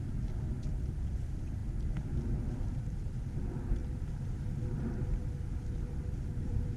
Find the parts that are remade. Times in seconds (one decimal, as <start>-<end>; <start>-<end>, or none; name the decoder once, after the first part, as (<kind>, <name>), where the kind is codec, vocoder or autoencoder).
0.0-1.6 (vocoder, BigVGAN v2); 2.7-6.8